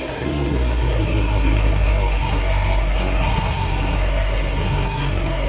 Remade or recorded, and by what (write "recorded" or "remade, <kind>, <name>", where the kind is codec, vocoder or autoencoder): remade, codec, SNAC